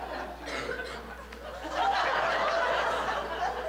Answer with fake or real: real